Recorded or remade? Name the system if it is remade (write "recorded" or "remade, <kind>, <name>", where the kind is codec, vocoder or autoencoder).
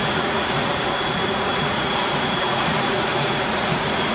remade, vocoder, Vocos